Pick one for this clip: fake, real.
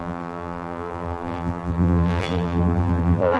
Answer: fake